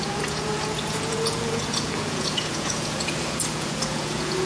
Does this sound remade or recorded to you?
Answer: remade